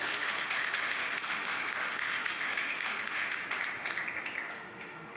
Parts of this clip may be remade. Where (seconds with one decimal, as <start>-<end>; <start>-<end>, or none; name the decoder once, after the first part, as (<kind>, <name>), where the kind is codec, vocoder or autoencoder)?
0.0-3.4 (autoencoder, DAC-VAE); 4.5-5.2